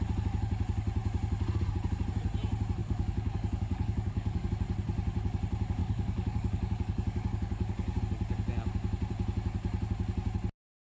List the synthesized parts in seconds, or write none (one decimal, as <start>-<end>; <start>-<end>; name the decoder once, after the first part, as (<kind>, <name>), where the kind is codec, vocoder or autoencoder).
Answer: 2.8-4.5 (codec, DAC); 5.8-8.0